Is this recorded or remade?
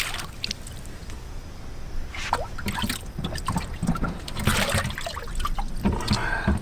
recorded